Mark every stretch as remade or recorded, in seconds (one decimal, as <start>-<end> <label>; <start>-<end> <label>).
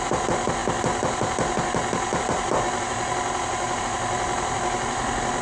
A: 0.0-5.4 recorded